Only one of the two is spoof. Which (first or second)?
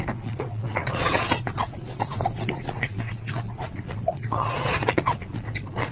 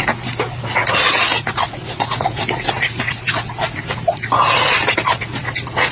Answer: first